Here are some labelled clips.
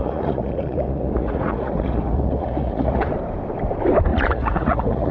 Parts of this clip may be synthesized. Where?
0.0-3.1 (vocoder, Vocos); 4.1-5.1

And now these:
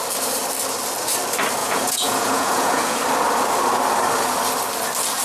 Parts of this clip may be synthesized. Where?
1.6-3.0 (vocoder, Vocos)

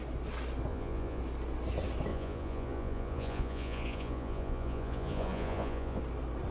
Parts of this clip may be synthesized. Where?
0.7-1.2 (vocoder, Vocos); 2.1-6.0

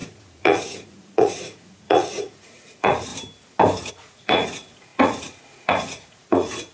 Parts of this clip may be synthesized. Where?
0.0-3.1 (vocoder, Vocos); 3.9-6.7

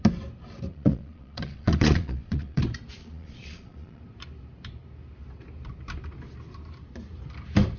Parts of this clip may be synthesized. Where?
0.7-2.6 (vocoder, Vocos); 3.0-4.0

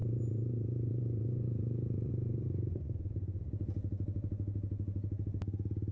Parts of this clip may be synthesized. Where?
0.0-3.4 (vocoder, Vocos)